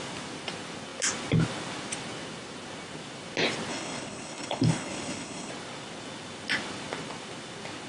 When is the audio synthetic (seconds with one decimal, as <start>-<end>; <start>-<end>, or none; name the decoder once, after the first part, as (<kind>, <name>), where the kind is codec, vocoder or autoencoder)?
3.7-5.5 (codec, HILCodec)